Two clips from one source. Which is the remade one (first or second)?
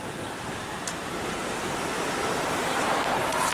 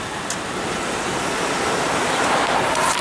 first